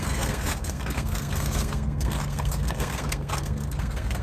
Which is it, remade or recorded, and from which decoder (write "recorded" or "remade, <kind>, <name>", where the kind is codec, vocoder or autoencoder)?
remade, codec, SNAC